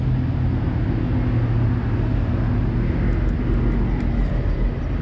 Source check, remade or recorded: recorded